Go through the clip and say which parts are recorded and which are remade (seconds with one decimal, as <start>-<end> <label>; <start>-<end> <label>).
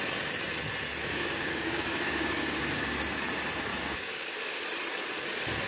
0.0-1.0 recorded; 1.0-2.6 remade; 2.6-3.7 recorded; 3.7-4.6 remade; 4.6-5.7 recorded